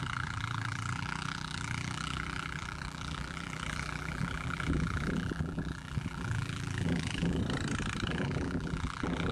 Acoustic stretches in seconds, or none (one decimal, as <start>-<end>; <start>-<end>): 7.4-8.1